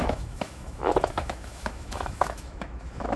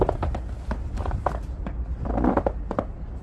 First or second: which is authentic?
second